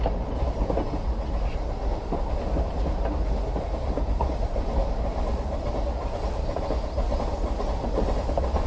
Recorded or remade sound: recorded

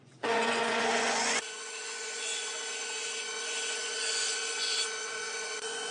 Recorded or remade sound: remade